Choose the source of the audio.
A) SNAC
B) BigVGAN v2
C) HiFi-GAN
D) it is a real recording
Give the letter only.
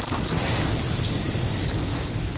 D